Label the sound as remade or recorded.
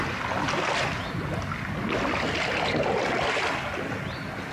recorded